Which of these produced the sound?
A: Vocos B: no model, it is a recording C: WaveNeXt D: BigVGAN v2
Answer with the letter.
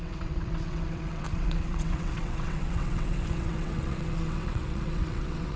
C